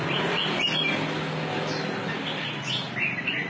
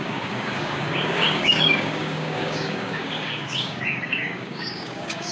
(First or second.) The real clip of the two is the first